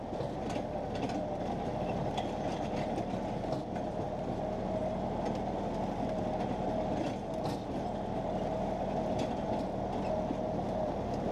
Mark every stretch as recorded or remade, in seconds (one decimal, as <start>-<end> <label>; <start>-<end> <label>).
0.0-11.3 recorded

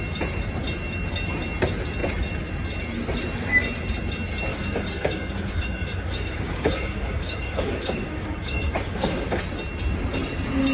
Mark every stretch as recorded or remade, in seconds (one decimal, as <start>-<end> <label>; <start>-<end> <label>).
0.0-4.5 recorded; 4.5-9.4 remade; 9.4-10.7 recorded